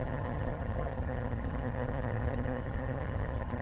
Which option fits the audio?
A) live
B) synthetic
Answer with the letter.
B